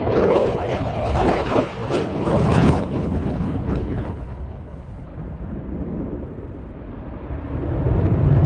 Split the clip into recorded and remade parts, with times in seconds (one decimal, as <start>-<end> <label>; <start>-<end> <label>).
0.0-5.1 remade; 5.1-8.5 recorded